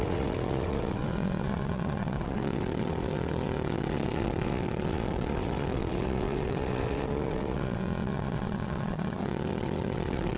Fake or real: fake